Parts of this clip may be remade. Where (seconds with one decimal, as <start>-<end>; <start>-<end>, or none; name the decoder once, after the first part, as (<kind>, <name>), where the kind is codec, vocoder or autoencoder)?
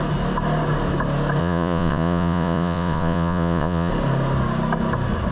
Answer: 1.4-3.9 (vocoder, Vocos)